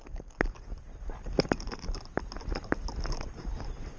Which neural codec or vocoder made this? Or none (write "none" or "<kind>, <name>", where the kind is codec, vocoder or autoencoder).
none